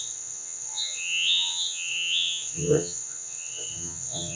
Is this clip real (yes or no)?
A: no